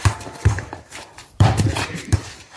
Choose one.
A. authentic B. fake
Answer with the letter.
B